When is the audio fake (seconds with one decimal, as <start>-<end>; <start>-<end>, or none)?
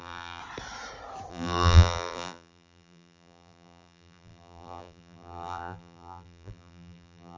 0.0-0.4; 1.3-7.4